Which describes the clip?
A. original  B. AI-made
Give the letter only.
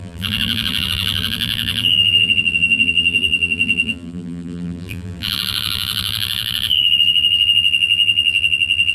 B